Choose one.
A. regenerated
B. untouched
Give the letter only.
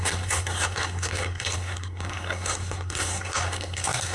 A